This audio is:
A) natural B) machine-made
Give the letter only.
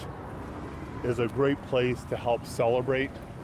A